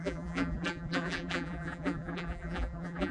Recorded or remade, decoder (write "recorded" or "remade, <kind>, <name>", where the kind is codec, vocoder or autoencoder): remade, vocoder, BigVGAN v2